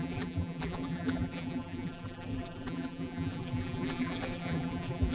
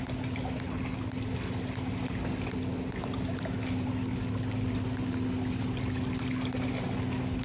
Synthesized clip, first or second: first